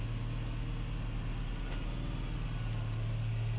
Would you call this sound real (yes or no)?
yes